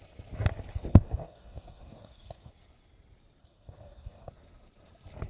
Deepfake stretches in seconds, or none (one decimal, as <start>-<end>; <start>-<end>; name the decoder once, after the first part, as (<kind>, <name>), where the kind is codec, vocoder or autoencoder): 0.9-2.5 (codec, DAC); 3.4-4.3